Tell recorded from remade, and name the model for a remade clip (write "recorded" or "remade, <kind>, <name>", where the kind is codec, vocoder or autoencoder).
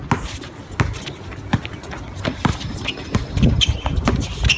recorded